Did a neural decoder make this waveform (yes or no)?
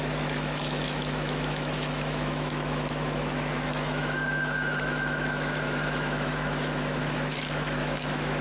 yes